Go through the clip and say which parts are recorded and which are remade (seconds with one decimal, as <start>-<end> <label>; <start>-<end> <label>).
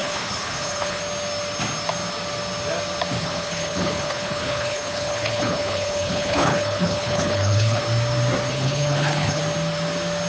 0.0-1.0 remade; 1.0-3.2 recorded; 3.2-7.8 remade; 7.8-8.5 recorded; 8.5-9.4 remade; 9.4-10.3 recorded